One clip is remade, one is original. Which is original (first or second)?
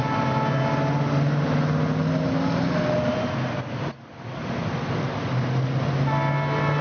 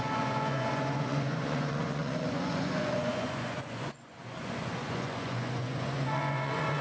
first